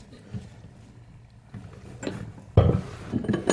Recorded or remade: recorded